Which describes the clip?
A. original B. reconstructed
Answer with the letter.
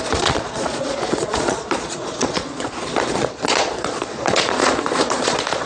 B